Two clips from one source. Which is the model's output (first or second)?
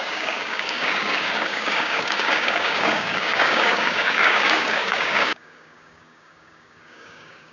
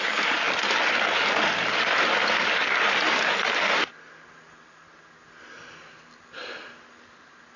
first